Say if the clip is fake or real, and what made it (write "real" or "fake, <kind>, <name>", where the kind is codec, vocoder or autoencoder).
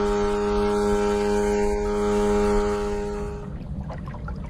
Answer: real